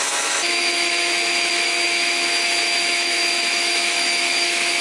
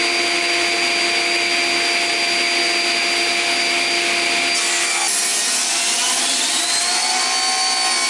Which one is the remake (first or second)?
first